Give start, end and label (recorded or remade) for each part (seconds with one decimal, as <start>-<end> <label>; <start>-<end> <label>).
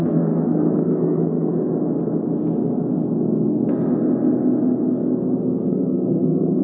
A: 0.0-1.5 remade; 1.5-5.4 recorded; 5.4-6.6 remade